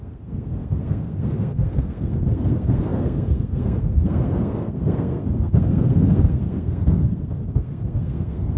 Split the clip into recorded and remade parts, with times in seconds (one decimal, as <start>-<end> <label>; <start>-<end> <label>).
0.0-8.6 remade